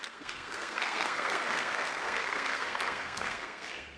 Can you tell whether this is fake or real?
fake